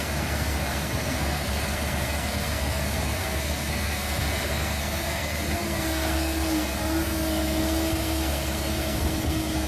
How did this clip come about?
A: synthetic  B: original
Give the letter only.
A